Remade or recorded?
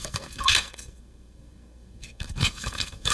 remade